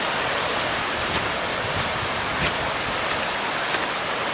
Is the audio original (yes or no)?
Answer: yes